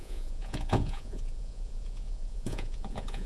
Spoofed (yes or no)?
yes